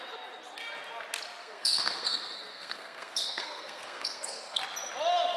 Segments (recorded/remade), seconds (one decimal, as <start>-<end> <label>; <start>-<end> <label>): 0.0-1.4 recorded; 1.4-4.6 remade; 4.6-5.4 recorded